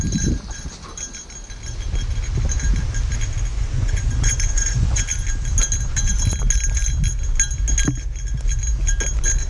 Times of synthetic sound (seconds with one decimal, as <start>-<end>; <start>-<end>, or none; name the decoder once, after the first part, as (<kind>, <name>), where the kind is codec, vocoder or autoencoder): 3.5-5.0 (vocoder, Vocos)